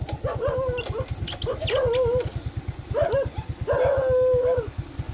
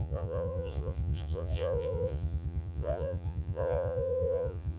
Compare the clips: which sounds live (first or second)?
first